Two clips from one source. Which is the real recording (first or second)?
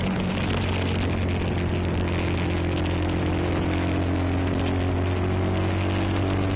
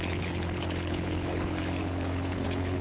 first